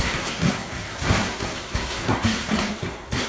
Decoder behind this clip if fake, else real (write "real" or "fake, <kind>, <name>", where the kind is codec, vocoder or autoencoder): fake, codec, SNAC